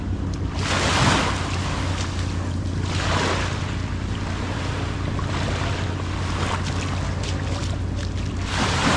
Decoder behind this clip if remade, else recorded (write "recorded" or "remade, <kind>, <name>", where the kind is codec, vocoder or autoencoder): recorded